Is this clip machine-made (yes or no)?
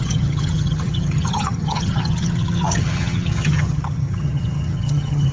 yes